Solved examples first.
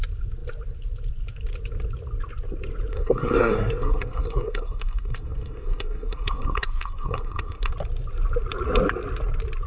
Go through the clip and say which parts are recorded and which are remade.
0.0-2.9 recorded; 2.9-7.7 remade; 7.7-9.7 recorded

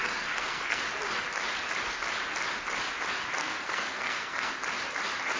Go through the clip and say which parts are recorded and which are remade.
0.0-0.8 remade; 0.8-3.4 recorded; 3.4-4.5 remade; 4.5-5.4 recorded

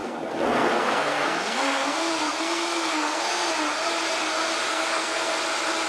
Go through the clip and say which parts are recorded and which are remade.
0.0-3.5 remade; 3.5-4.7 recorded; 4.7-5.4 remade; 5.4-5.9 recorded

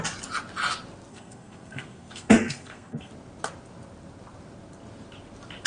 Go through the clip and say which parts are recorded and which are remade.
0.0-1.1 recorded; 1.1-3.1 remade; 3.1-5.7 recorded